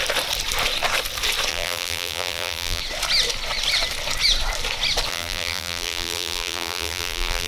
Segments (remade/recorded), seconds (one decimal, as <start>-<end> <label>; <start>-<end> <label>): 0.0-1.5 recorded; 1.5-2.8 remade; 2.8-5.1 recorded; 5.1-7.5 remade